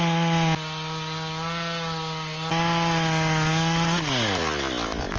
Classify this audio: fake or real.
real